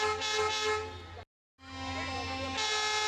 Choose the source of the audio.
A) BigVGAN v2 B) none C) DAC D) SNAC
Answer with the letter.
B